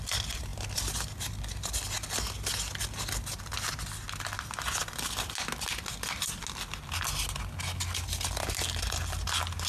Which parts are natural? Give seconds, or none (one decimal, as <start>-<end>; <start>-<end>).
0.0-9.7